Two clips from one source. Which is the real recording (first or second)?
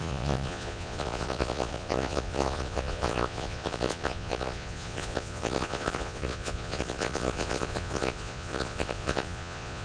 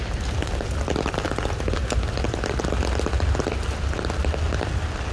second